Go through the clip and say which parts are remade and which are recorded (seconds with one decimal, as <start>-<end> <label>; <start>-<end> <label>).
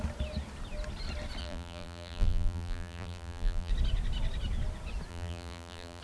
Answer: 0.0-1.4 recorded; 1.4-3.7 remade; 3.7-5.1 recorded; 5.1-6.0 remade